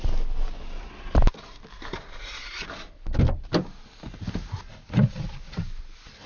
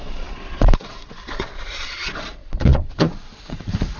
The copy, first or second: second